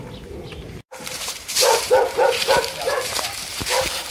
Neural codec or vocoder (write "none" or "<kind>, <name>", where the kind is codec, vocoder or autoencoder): vocoder, BigVGAN v2